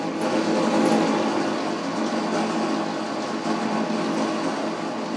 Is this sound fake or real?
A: real